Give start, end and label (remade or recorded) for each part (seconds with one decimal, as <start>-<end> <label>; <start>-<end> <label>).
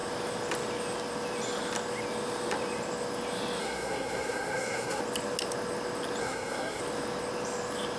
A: 0.0-3.6 recorded; 3.6-5.0 remade; 5.0-6.2 recorded; 6.2-6.8 remade; 6.8-8.0 recorded